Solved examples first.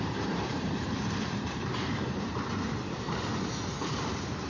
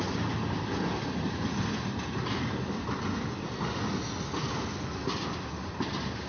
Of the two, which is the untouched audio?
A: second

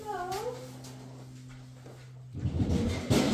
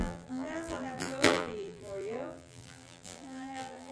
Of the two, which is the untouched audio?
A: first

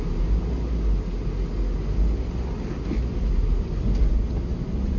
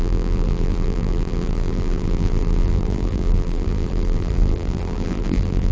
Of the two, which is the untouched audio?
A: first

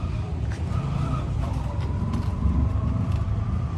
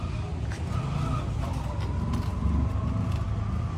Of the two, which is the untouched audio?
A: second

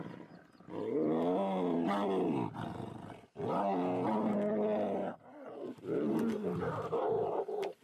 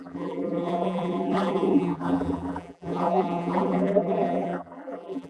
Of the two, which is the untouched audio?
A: first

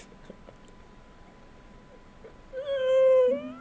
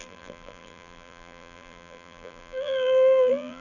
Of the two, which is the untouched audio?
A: first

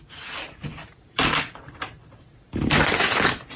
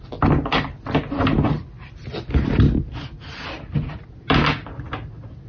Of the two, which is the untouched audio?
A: second